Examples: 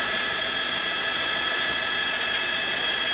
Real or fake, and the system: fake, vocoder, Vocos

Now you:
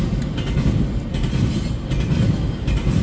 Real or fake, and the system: real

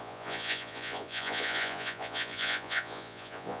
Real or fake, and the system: fake, vocoder, Vocos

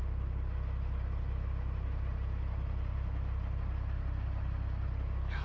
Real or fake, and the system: real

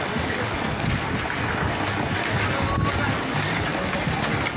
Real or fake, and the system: real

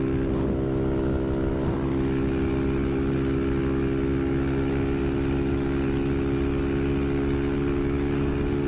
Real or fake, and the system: real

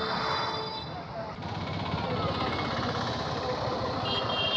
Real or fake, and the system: real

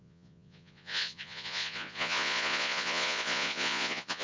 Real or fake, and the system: fake, vocoder, Vocos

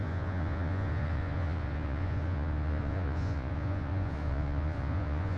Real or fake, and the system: fake, vocoder, Vocos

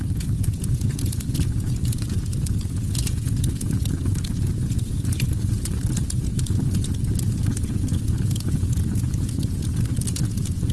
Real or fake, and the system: fake, vocoder, Vocos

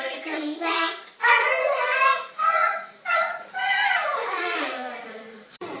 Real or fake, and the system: fake, vocoder, Vocos